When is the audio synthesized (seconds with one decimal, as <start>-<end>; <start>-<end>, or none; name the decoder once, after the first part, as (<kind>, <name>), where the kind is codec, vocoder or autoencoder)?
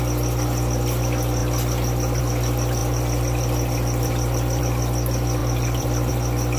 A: 2.8-4.6 (vocoder, BigVGAN v2); 5.4-6.1